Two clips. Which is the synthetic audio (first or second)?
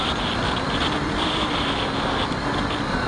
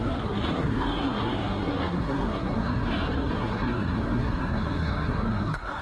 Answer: second